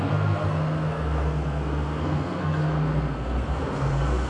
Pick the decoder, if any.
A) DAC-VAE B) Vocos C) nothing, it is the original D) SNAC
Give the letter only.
D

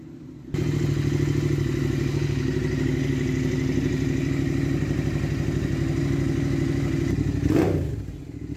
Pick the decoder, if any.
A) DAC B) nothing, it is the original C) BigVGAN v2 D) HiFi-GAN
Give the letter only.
B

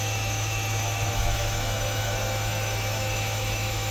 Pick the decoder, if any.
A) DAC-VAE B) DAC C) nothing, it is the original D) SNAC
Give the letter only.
A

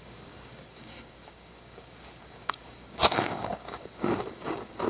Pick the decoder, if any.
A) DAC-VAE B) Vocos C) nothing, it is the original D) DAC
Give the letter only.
D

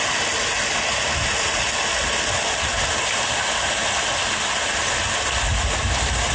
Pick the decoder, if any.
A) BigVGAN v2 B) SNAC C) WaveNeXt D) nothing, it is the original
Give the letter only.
D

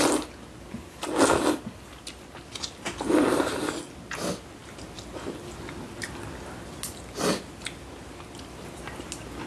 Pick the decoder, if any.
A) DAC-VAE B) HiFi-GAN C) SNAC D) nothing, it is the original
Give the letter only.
D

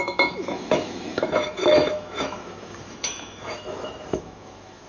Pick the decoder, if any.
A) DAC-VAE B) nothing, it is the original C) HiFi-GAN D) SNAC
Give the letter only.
A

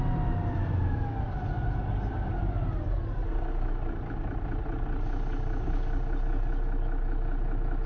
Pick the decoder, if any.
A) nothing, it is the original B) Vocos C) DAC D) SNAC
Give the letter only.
A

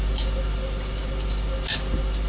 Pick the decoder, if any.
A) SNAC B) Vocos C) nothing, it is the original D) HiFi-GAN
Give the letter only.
C